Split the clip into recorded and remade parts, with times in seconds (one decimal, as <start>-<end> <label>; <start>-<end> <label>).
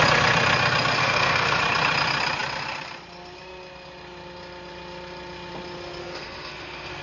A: 0.0-1.0 recorded; 1.0-1.6 remade; 1.6-6.0 recorded; 6.0-7.0 remade